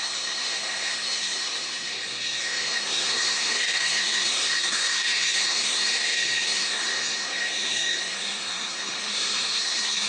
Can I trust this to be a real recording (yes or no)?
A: no